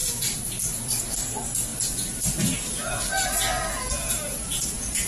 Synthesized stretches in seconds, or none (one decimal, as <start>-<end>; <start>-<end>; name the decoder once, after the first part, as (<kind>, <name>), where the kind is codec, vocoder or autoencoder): 0.0-1.0 (vocoder, BigVGAN v2)